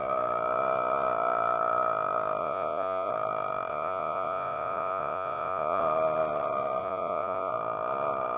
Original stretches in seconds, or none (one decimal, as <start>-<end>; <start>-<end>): 0.0-2.4; 3.1-3.7; 5.8-6.8; 7.5-8.4